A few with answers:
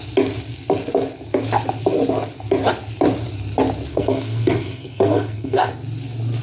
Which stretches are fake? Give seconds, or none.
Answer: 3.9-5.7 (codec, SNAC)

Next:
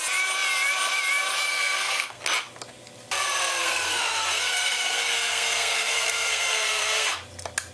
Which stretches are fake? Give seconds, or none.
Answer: 1.5-2.2 (codec, SNAC); 3.6-7.1